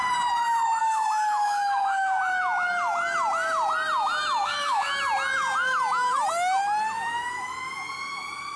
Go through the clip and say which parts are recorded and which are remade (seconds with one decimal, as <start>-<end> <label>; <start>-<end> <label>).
0.0-0.8 recorded; 0.8-2.2 remade; 2.2-4.4 recorded; 4.4-4.9 remade; 4.9-8.6 recorded